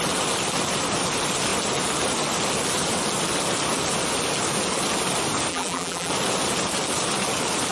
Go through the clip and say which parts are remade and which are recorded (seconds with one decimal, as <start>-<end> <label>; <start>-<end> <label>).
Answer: 0.0-5.5 recorded; 5.5-6.1 remade; 6.1-7.7 recorded